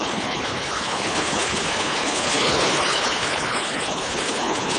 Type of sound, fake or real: fake